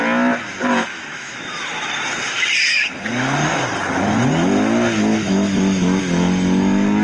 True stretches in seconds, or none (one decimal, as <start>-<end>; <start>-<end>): 0.0-0.9; 1.9-5.1; 6.0-7.0